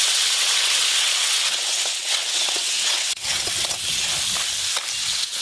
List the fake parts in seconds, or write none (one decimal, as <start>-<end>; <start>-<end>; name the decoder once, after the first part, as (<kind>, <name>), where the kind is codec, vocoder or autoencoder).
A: 0.0-4.1 (vocoder, WaveNeXt); 5.0-5.4